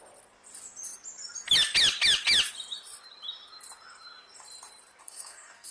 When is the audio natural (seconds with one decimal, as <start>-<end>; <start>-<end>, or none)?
0.0-5.0